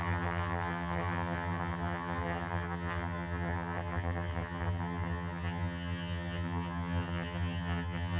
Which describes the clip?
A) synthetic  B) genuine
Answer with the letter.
A